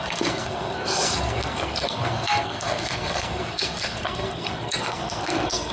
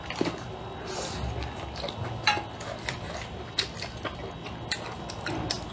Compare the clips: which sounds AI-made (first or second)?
first